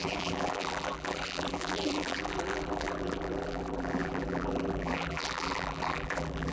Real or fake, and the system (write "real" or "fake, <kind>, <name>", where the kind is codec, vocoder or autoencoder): fake, vocoder, BigVGAN v2